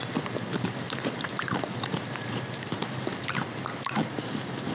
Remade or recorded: recorded